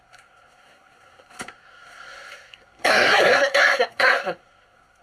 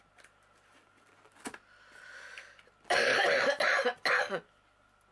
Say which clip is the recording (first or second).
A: second